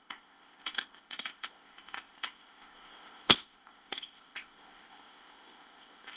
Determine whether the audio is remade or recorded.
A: remade